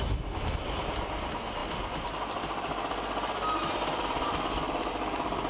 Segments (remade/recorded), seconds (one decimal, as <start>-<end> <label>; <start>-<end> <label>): 0.0-5.5 recorded